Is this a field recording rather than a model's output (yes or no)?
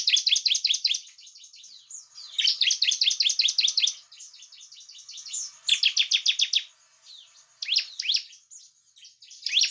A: yes